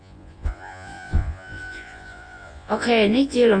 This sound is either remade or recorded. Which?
remade